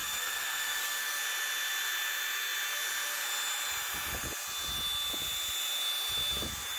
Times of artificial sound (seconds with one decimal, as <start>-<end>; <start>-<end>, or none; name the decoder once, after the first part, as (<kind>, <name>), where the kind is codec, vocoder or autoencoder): 0.0-1.2 (codec, SNAC)